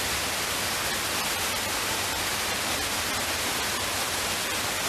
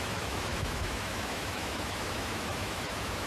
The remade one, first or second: second